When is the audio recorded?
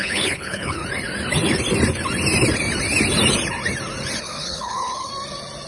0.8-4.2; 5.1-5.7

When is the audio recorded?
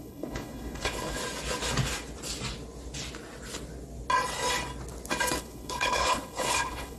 1.2-5.4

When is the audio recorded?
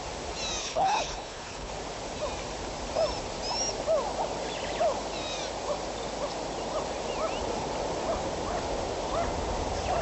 0.0-0.6; 1.7-10.0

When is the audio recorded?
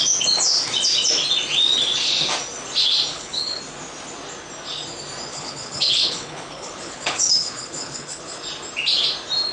0.0-3.1; 3.6-5.3; 8.4-9.5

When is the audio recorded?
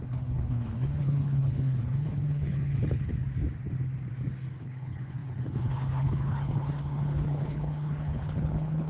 3.1-4.6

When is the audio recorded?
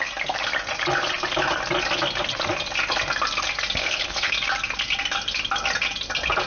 0.0-3.8; 4.3-6.5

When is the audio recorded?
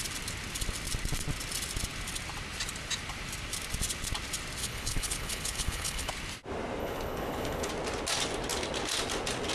0.0-4.6; 6.1-6.8; 7.7-9.5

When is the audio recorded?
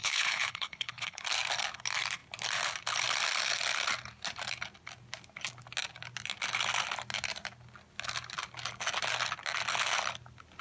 1.2-10.6